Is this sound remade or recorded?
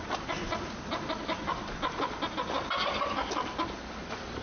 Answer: recorded